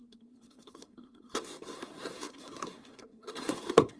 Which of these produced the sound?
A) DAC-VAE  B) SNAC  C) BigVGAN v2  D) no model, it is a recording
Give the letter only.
B